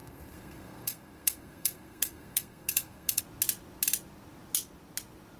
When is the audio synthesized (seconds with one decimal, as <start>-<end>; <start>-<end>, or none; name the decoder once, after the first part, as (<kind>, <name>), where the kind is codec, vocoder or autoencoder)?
0.0-3.2 (codec, SNAC)